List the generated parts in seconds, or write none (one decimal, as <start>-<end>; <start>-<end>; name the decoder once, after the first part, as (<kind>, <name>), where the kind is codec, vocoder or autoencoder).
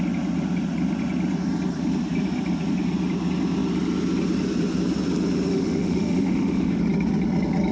5.5-6.8 (autoencoder, DAC-VAE)